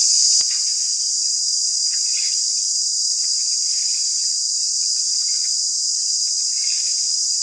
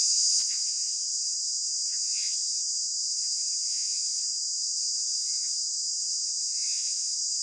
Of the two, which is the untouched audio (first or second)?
first